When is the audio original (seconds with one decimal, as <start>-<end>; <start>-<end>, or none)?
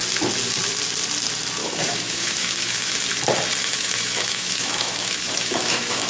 0.0-1.6; 3.0-3.6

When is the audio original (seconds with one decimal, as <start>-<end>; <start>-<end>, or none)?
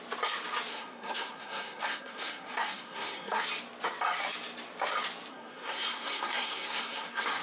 0.0-0.7; 3.4-5.3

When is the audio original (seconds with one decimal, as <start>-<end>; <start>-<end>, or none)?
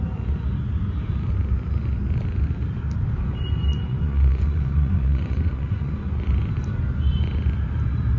0.0-3.7; 6.2-8.2